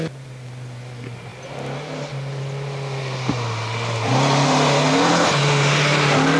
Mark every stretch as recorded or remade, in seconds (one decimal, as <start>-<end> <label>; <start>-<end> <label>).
0.0-6.4 recorded